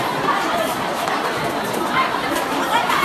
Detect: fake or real real